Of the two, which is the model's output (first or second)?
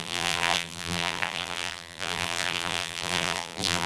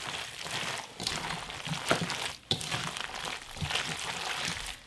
first